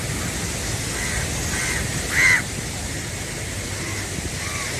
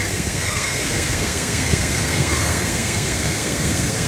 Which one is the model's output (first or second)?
second